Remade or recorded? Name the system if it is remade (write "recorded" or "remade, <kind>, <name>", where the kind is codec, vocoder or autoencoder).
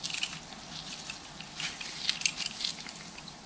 recorded